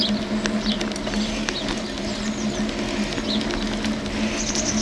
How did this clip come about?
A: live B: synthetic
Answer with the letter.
A